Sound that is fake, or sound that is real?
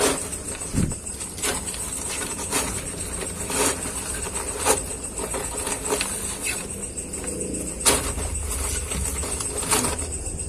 real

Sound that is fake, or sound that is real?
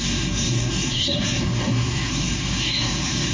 fake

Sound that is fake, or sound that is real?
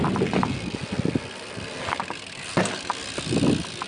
real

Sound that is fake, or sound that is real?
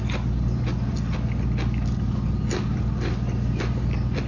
real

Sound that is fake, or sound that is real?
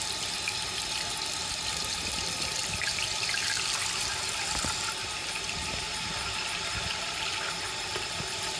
real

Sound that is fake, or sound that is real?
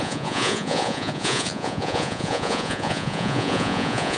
fake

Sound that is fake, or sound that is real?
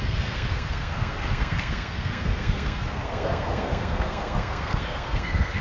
fake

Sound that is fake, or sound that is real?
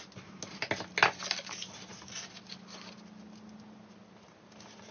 real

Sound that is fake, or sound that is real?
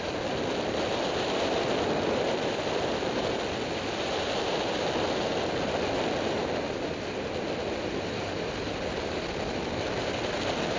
real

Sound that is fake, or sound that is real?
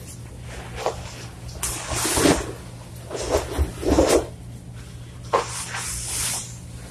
real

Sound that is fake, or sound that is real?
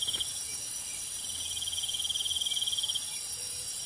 real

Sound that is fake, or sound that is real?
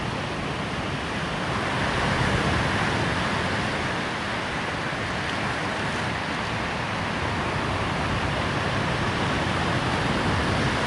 real